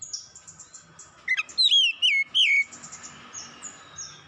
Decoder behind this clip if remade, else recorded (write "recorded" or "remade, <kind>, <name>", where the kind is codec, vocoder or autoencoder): recorded